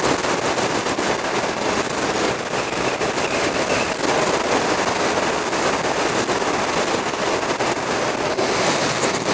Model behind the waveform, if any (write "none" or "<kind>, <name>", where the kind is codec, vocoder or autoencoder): none